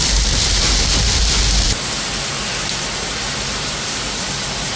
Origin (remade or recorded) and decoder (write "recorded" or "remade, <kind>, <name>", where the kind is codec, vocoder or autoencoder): recorded